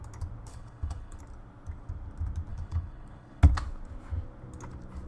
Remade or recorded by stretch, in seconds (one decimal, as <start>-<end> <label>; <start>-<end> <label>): 0.0-0.5 recorded; 0.5-1.2 remade; 1.2-2.5 recorded; 2.5-3.4 remade; 3.4-5.1 recorded